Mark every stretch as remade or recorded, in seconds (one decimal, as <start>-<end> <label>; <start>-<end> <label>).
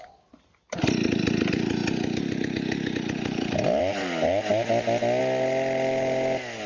0.0-6.7 recorded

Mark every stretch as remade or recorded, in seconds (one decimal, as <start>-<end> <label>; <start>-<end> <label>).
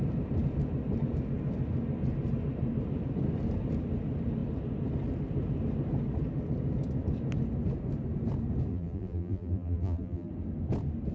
0.0-8.7 recorded; 8.7-10.3 remade; 10.3-11.1 recorded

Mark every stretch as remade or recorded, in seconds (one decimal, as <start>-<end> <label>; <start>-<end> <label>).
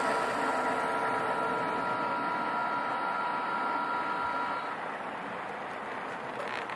0.0-6.8 recorded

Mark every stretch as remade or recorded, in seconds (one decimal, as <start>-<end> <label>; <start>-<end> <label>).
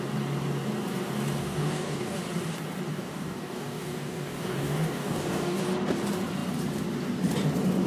0.0-1.4 recorded; 1.4-2.2 remade; 2.2-2.9 recorded; 2.9-5.6 remade; 5.6-7.9 recorded